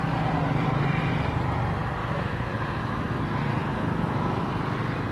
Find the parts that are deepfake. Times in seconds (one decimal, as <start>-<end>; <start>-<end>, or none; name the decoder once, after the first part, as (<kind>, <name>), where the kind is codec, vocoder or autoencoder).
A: 2.0-3.2 (autoencoder, DAC-VAE); 3.6-4.4